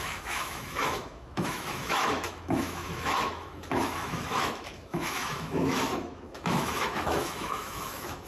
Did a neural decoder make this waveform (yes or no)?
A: yes